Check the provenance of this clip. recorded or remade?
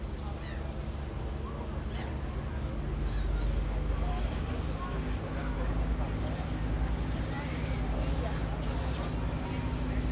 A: recorded